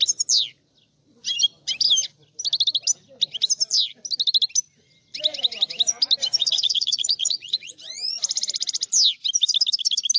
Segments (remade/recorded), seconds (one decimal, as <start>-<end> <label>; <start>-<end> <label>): 0.0-6.4 recorded; 6.4-8.2 remade; 8.2-10.2 recorded